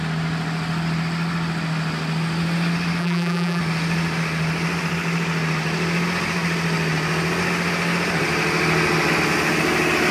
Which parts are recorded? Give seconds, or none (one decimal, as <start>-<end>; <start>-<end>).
0.0-3.0; 3.6-10.1